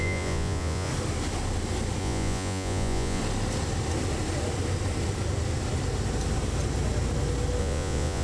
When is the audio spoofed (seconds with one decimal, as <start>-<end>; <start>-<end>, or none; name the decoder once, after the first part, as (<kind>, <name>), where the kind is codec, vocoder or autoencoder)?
0.0-0.9 (vocoder, Vocos); 2.0-3.2; 7.6-8.2